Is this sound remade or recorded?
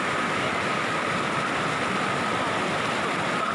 recorded